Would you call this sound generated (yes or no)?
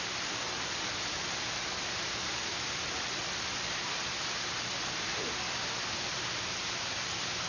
no